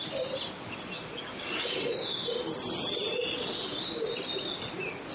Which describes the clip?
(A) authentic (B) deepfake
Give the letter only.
A